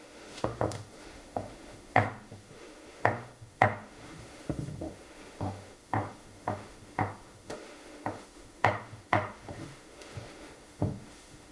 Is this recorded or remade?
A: remade